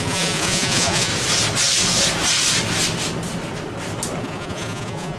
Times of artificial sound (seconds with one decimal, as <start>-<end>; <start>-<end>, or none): 0.0-1.1; 4.2-5.2